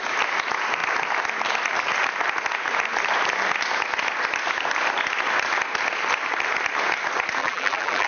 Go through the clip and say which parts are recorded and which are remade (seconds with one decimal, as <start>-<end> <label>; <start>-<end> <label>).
0.0-7.4 recorded; 7.4-8.1 remade